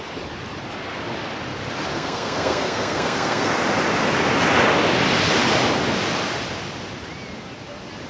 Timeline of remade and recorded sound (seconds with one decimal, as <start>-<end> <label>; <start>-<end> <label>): 0.0-1.9 recorded; 1.9-3.5 remade; 3.5-8.1 recorded